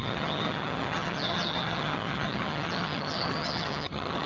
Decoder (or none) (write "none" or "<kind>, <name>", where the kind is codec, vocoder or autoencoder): vocoder, HiFi-GAN